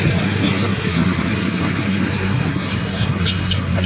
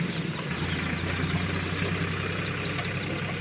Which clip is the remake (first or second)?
first